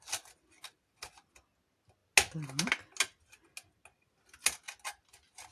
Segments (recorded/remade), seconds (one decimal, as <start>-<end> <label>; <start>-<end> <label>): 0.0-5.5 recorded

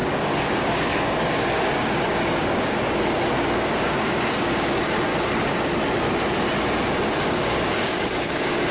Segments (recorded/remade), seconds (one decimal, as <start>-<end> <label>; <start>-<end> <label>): 0.0-5.1 remade; 5.1-7.3 recorded; 7.3-8.7 remade

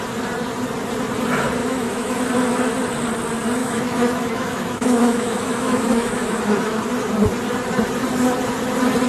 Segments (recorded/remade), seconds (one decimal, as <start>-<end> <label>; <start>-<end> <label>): 0.0-1.6 recorded; 1.6-2.2 remade; 2.2-3.6 recorded; 3.6-6.8 remade; 6.8-9.1 recorded

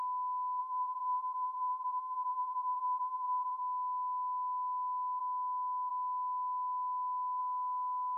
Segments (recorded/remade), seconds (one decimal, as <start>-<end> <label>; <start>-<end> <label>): 0.0-0.6 recorded; 0.6-3.6 remade; 3.6-8.2 recorded

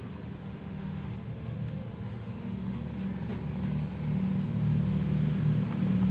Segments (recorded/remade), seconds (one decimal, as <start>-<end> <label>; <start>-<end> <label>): 0.0-0.4 recorded; 0.4-2.8 remade; 2.8-6.1 recorded